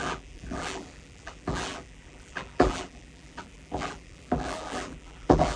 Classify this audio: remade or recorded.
remade